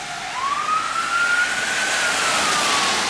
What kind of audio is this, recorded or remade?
recorded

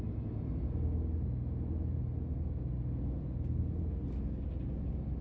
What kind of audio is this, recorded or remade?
recorded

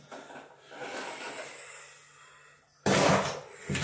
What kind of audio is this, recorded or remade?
recorded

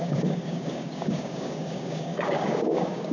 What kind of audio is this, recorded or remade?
remade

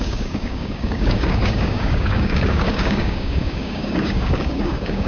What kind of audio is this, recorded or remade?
remade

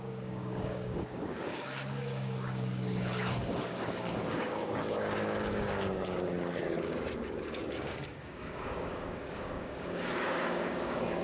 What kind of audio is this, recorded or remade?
remade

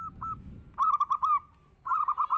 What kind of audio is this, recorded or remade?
recorded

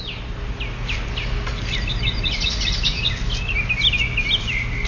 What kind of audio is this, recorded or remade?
recorded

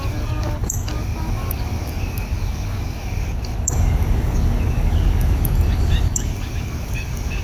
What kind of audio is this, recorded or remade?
remade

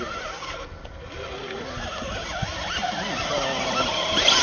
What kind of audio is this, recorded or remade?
recorded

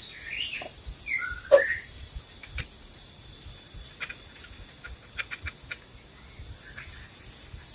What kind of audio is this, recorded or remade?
recorded